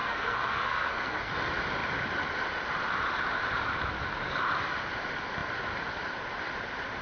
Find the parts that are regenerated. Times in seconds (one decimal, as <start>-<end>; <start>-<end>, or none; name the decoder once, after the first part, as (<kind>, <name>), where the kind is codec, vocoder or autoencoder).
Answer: 0.0-1.3 (codec, SNAC)